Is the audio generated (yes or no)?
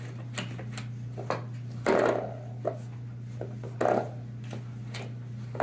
no